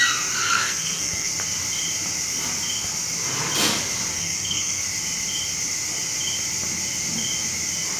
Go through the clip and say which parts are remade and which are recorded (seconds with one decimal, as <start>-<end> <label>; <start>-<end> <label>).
0.0-0.4 recorded; 0.4-1.3 remade; 1.3-4.1 recorded; 4.1-4.8 remade; 4.8-8.0 recorded